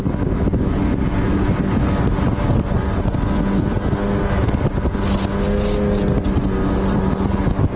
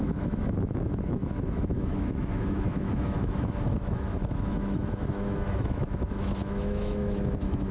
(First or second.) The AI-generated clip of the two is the second